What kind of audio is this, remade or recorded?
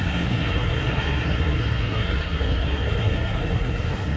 remade